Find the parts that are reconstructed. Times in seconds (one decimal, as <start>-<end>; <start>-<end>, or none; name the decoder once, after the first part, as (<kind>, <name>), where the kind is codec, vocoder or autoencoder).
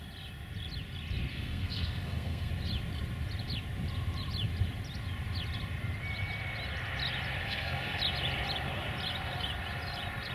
1.3-2.5 (codec, SNAC); 7.4-8.0